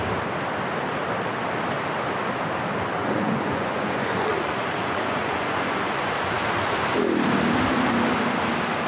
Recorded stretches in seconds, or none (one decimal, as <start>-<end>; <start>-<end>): 0.0-3.0; 6.3-8.9